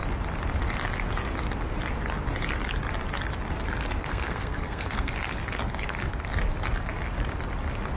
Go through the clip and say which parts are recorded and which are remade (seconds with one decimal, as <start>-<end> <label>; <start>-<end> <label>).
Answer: 0.0-4.1 recorded; 4.1-5.1 remade; 5.1-8.0 recorded